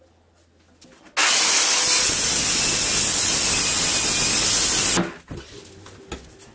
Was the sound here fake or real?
real